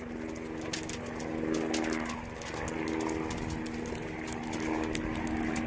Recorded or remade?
recorded